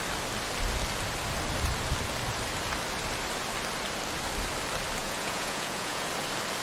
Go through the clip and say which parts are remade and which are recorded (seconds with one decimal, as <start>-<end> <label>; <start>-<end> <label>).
0.0-5.0 recorded; 5.0-6.1 remade; 6.1-6.6 recorded